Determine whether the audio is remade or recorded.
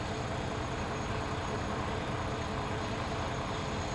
recorded